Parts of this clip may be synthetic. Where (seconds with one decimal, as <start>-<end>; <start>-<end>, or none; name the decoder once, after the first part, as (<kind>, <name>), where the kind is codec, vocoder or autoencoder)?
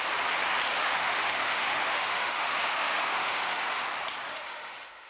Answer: 0.7-3.8 (autoencoder, DAC-VAE); 4.3-5.1